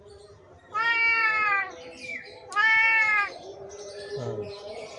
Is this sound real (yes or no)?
no